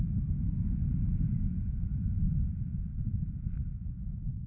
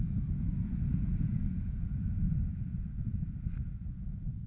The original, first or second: first